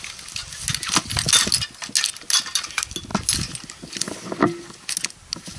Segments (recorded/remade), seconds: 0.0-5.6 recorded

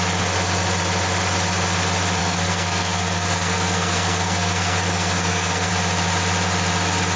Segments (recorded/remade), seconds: 0.0-2.2 recorded; 2.2-5.7 remade; 5.7-7.2 recorded

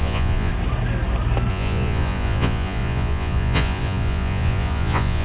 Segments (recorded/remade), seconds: 0.0-0.5 remade; 0.5-1.5 recorded; 1.5-5.2 remade

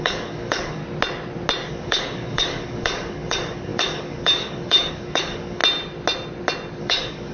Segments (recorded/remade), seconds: 0.0-0.8 remade; 0.8-1.7 recorded; 1.7-5.6 remade; 5.6-6.8 recorded; 6.8-7.3 remade

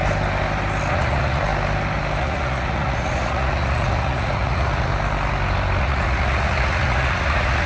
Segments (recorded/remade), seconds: 0.0-0.9 recorded; 0.9-1.5 remade; 1.5-2.2 recorded; 2.2-4.9 remade; 4.9-5.8 recorded; 5.8-7.7 remade